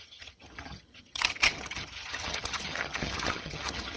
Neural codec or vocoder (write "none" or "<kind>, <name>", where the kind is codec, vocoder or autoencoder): vocoder, HiFi-GAN